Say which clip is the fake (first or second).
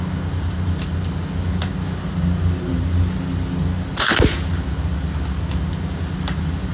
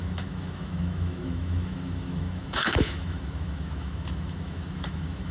second